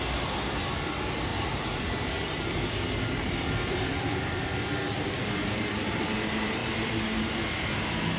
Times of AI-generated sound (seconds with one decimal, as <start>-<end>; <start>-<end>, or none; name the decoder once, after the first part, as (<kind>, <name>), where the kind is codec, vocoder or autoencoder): 1.3-5.9 (vocoder, BigVGAN v2); 6.6-7.4